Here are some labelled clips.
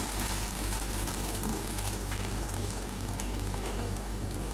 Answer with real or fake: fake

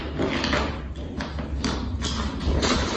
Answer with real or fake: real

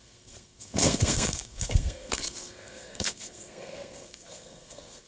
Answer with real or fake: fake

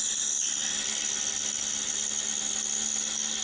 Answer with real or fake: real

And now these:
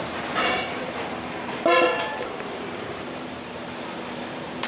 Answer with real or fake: fake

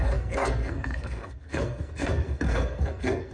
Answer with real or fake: fake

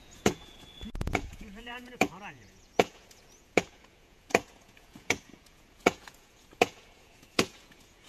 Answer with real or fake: fake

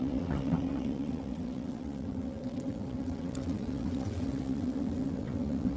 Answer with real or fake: fake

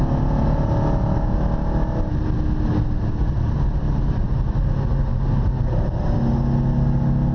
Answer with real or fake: real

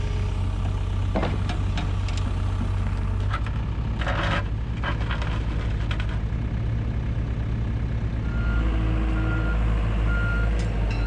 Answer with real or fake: real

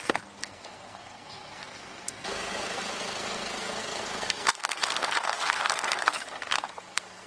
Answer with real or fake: fake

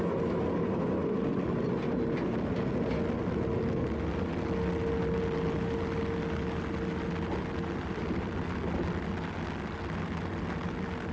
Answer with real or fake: real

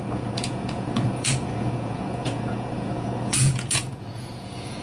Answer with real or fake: fake